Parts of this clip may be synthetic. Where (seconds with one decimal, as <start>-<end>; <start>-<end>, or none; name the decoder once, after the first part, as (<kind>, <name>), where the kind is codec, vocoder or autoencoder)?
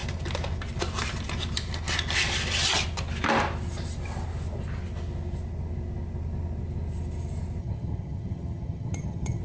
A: 7.6-9.4 (vocoder, HiFi-GAN)